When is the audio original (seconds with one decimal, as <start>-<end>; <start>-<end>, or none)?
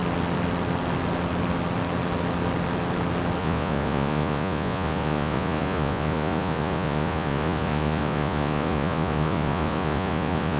0.0-3.4